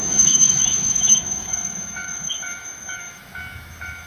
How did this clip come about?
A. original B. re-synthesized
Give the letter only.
B